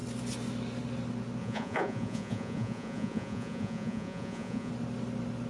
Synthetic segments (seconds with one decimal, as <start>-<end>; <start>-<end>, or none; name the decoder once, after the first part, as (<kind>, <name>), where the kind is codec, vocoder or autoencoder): 1.4-4.7 (vocoder, Vocos)